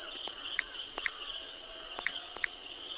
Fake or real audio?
fake